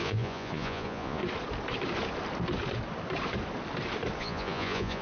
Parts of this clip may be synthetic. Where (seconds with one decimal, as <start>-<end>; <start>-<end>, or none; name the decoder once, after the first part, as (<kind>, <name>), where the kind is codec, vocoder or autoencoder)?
0.0-1.2 (vocoder, Vocos); 4.2-5.0